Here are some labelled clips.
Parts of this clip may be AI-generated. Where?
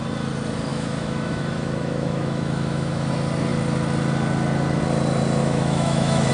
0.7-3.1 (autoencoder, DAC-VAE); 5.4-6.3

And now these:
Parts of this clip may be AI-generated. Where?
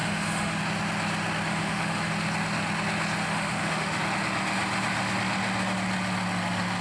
0.0-0.6 (autoencoder, DAC-VAE); 1.5-2.1; 3.2-4.0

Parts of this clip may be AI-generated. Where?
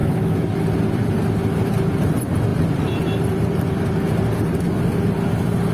0.0-0.5 (autoencoder, DAC-VAE)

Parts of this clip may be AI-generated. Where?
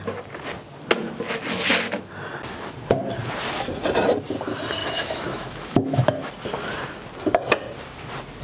4.8-6.3 (autoencoder, DAC-VAE)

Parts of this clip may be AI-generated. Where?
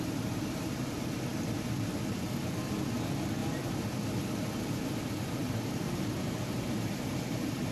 none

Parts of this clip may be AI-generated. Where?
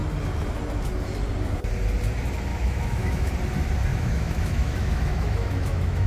2.5-3.3 (autoencoder, DAC-VAE); 3.9-6.1